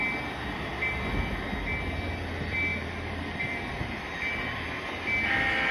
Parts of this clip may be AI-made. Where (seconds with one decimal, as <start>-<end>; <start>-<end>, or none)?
2.7-4.2